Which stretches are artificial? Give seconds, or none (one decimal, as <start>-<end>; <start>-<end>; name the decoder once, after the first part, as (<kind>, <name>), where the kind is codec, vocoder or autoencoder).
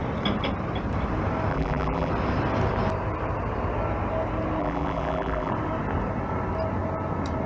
1.5-2.1 (vocoder, BigVGAN v2); 4.6-5.5